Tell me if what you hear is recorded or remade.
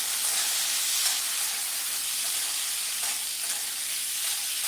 recorded